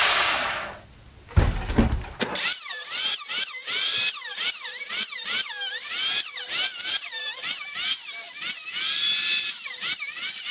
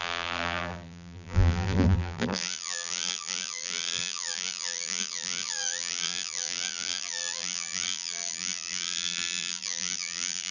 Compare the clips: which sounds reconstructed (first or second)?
second